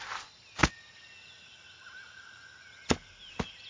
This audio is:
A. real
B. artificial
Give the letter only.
A